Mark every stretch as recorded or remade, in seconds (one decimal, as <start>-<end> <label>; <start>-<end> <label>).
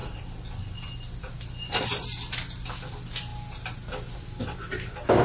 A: 0.0-5.2 recorded